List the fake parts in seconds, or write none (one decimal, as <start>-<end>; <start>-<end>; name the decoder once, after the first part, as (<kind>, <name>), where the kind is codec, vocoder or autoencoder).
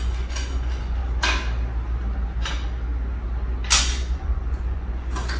0.0-1.0 (vocoder, Vocos); 3.8-5.4